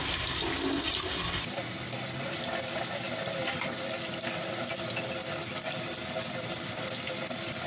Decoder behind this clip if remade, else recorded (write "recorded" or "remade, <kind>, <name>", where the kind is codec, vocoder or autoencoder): recorded